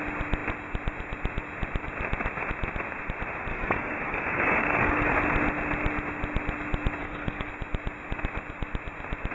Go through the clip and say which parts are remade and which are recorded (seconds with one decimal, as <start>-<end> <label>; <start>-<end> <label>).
0.0-3.5 recorded; 3.5-5.2 remade; 5.2-7.0 recorded; 7.0-7.5 remade; 7.5-9.3 recorded